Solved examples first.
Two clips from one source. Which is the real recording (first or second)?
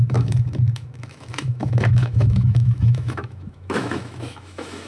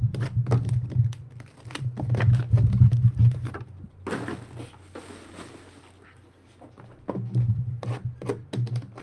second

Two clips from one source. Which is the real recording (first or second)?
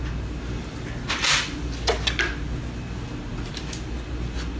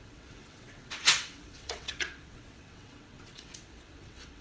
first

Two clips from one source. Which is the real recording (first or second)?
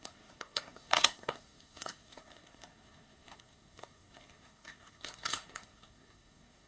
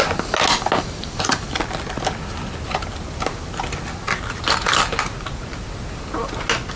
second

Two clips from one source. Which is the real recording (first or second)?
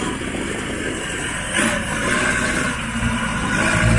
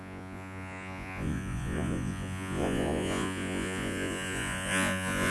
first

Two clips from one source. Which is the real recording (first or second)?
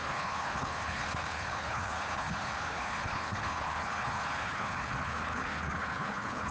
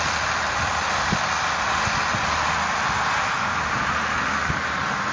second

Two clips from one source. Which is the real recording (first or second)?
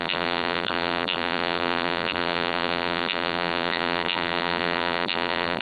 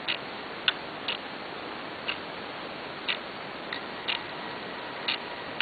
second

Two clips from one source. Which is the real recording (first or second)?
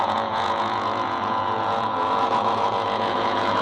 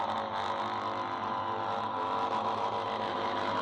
second